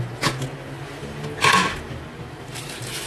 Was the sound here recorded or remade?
recorded